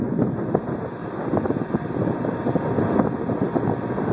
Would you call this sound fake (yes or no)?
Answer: no